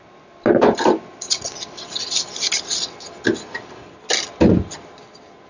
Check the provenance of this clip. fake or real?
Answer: real